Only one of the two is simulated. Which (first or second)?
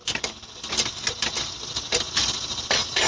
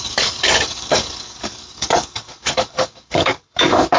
second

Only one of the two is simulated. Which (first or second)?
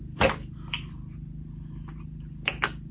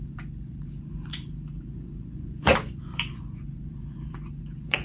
second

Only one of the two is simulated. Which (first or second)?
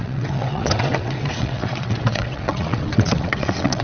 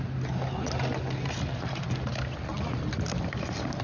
first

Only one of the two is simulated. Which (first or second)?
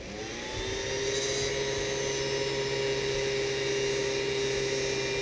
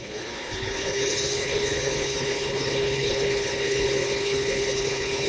second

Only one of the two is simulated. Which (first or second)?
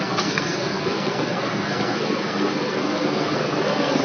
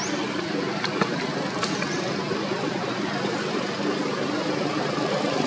first